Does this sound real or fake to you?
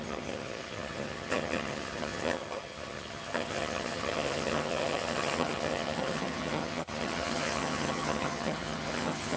fake